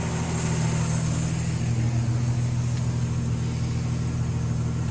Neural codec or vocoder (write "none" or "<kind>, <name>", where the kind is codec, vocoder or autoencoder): none